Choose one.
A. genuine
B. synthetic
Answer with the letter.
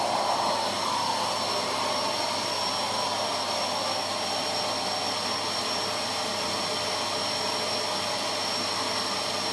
A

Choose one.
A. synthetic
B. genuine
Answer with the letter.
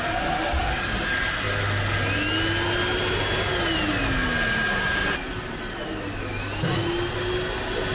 B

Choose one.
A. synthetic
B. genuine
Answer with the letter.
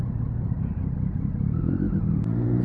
B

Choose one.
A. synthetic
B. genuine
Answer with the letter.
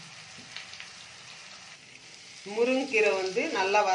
B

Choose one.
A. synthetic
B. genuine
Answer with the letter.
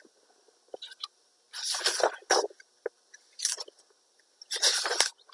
B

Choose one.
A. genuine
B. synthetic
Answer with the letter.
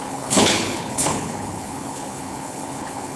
B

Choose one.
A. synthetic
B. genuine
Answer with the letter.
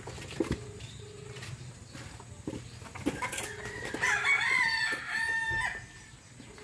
B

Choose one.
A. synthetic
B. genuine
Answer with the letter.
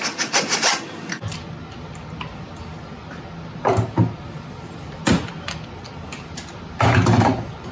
B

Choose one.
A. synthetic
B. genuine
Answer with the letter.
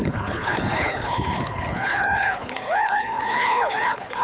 A